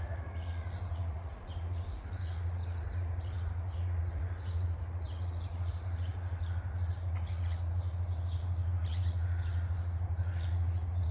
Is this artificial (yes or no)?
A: yes